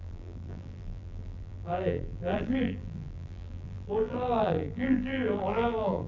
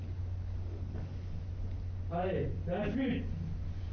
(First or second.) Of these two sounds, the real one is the second